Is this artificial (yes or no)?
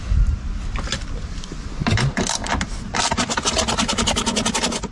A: no